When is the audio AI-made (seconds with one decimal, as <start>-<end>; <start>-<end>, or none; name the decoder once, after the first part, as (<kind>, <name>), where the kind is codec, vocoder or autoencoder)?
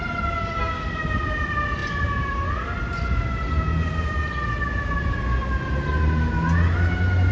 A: none